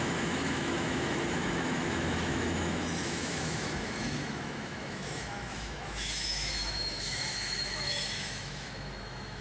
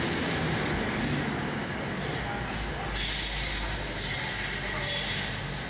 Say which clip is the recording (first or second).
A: second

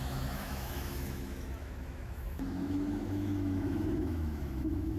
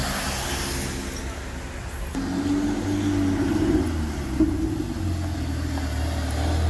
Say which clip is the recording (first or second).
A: second